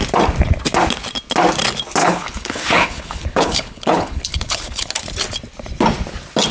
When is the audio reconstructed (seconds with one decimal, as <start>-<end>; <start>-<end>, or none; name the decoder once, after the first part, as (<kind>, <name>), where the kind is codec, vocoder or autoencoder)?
2.0-4.9 (codec, HILCodec)